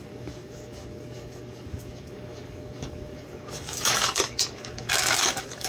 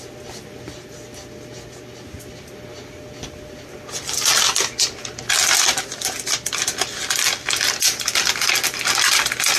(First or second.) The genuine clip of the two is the second